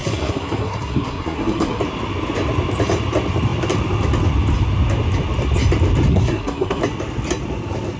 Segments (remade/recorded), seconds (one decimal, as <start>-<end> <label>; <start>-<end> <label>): 0.0-1.8 remade; 1.8-6.1 recorded; 6.1-6.8 remade; 6.8-8.0 recorded